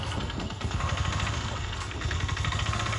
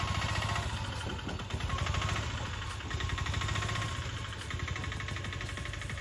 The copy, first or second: first